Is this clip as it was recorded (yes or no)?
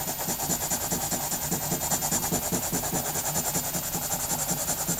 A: yes